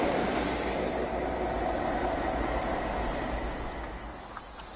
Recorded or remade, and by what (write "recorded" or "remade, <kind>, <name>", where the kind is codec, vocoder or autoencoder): recorded